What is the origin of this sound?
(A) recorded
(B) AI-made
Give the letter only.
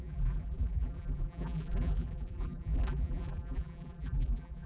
B